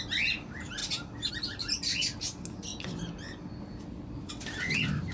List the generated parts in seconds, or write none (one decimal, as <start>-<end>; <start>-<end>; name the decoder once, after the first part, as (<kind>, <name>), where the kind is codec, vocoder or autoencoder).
none